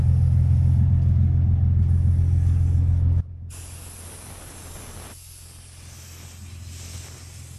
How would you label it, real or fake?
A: real